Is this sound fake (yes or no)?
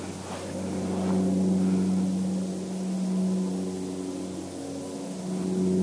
no